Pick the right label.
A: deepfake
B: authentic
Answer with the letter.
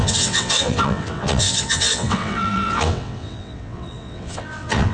A